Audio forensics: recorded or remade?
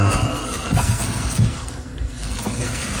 remade